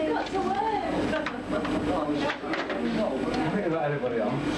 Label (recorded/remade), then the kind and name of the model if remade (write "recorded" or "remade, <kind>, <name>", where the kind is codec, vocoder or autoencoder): recorded